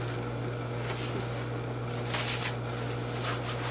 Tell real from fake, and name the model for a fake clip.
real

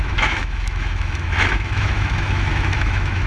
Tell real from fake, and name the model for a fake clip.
fake, autoencoder, DAC-VAE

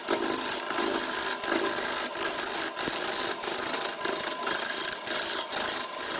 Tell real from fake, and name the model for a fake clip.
real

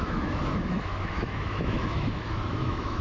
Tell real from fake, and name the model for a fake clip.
fake, autoencoder, DAC-VAE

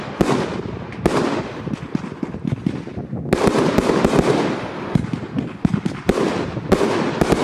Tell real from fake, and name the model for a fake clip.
real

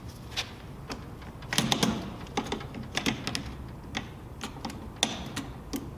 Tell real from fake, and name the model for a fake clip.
real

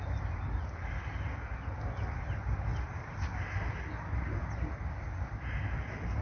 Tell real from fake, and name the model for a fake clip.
real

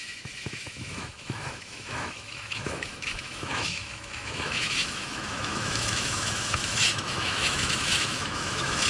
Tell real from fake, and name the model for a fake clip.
fake, autoencoder, DAC-VAE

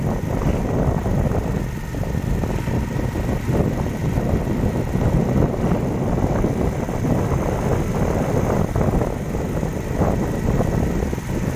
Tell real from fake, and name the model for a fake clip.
real